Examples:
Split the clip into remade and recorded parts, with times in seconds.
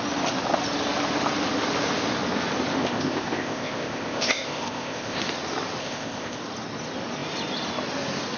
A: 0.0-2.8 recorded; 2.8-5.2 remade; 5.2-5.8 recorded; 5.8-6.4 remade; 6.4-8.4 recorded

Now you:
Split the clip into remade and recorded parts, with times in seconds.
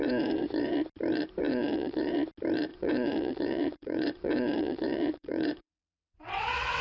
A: 0.0-1.5 recorded; 1.5-2.1 remade; 2.1-2.7 recorded; 2.7-6.8 remade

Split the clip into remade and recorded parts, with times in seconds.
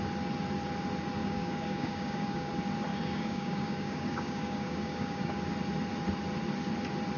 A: 0.0-1.2 recorded; 1.2-2.5 remade; 2.5-2.9 recorded; 2.9-5.4 remade; 5.4-7.2 recorded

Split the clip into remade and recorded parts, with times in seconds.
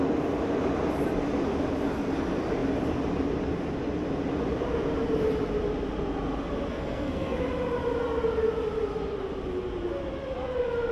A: 0.0-6.7 recorded; 6.7-7.4 remade; 7.4-10.9 recorded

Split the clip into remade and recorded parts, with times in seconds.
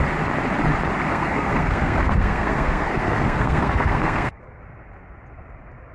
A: 0.0-1.1 recorded; 1.1-4.6 remade; 4.6-5.9 recorded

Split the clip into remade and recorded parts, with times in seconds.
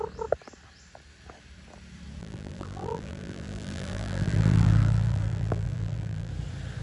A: 0.0-2.2 recorded; 2.2-6.3 remade; 6.3-6.8 recorded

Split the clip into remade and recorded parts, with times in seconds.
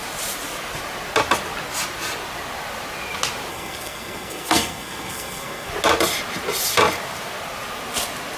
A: 0.0-3.5 recorded; 3.5-5.7 remade; 5.7-8.4 recorded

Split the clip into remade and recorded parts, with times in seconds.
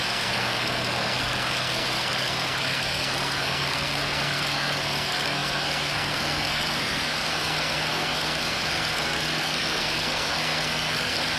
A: 0.0-11.4 remade